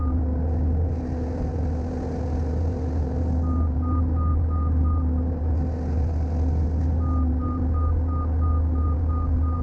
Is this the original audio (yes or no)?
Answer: yes